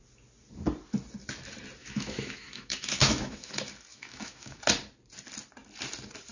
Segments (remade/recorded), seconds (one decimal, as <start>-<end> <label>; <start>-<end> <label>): 0.0-1.8 recorded; 1.8-3.5 remade; 3.5-3.9 recorded; 3.9-4.6 remade; 4.6-6.3 recorded